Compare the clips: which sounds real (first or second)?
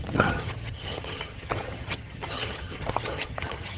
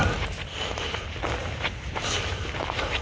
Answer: second